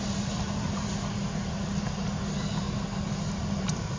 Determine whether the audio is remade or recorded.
recorded